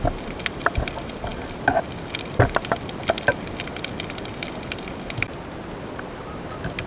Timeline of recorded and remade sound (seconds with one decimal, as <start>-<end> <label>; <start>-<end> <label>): 0.0-6.9 recorded